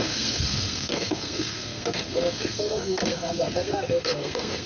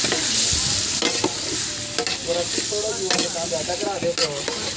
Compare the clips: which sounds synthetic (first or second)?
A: first